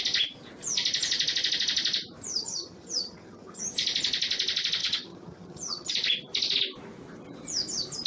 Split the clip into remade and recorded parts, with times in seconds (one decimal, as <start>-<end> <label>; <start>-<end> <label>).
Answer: 0.0-2.3 recorded; 2.3-3.6 remade; 3.6-4.8 recorded; 4.8-5.9 remade; 5.9-8.1 recorded